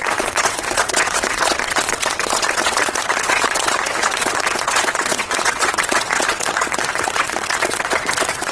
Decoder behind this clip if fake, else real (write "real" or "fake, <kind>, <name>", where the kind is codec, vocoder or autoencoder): fake, vocoder, WaveNeXt